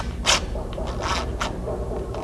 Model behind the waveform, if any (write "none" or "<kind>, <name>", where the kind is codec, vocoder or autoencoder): none